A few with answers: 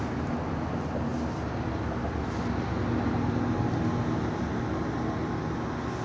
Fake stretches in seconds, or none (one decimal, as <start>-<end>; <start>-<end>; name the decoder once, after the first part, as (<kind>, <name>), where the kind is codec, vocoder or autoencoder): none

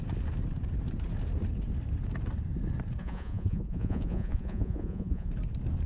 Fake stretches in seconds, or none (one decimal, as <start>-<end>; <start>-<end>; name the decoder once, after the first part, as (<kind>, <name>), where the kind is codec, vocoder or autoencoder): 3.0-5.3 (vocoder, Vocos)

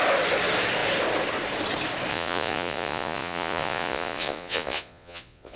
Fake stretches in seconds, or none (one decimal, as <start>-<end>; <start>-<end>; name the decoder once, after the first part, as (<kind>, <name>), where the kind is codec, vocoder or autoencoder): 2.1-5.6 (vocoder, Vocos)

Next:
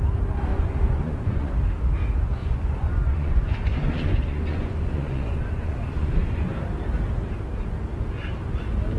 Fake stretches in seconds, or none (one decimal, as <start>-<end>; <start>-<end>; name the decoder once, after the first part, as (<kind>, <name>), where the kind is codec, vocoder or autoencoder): 0.5-1.5 (vocoder, Vocos); 2.4-6.5